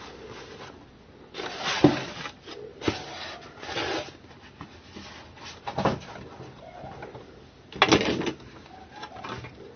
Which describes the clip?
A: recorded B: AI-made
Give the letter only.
A